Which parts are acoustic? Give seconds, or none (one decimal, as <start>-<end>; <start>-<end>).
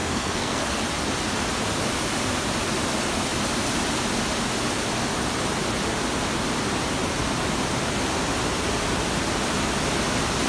0.8-10.5